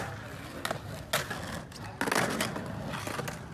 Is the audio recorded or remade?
recorded